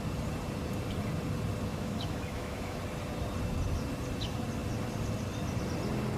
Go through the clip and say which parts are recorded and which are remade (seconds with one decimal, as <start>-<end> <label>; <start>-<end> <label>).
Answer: 0.0-1.7 recorded; 1.7-2.8 remade; 2.8-6.2 recorded

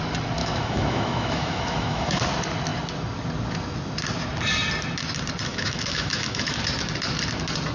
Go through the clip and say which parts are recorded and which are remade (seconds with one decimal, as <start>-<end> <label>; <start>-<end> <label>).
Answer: 0.0-0.4 recorded; 0.4-2.2 remade; 2.2-5.5 recorded; 5.5-6.6 remade; 6.6-7.7 recorded

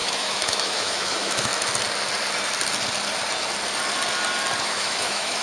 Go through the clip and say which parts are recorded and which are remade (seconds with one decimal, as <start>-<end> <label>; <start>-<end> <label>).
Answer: 0.0-1.5 remade; 1.5-4.6 recorded; 4.6-5.4 remade

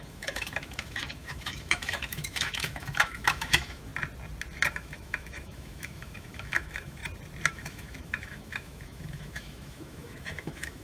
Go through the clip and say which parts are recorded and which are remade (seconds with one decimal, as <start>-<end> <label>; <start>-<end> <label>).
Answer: 0.0-3.9 remade; 3.9-4.7 recorded; 4.7-7.0 remade; 7.0-7.5 recorded; 7.5-10.8 remade

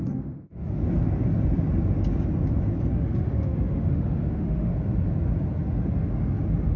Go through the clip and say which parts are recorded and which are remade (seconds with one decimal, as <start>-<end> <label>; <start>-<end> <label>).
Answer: 0.0-0.8 remade; 0.8-2.9 recorded; 2.9-4.7 remade; 4.7-6.8 recorded